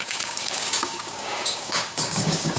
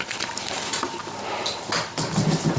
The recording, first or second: second